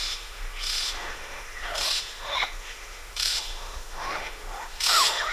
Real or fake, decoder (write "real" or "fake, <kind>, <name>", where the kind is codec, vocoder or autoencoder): fake, autoencoder, DAC-VAE